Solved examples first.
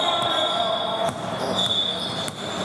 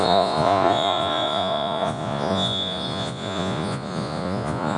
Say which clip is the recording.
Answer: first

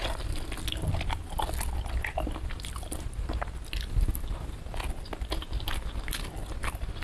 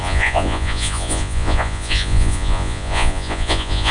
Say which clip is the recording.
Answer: first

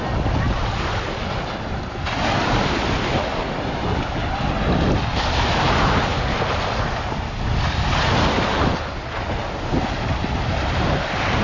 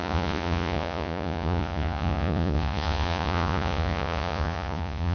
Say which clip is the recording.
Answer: first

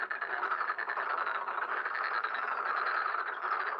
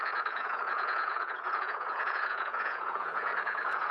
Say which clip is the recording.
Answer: first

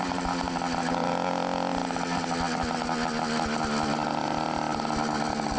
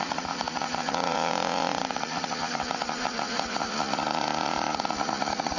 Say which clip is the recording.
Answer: first